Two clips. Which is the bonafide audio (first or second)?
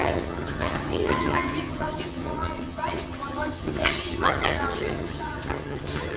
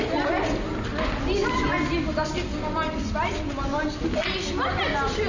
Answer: second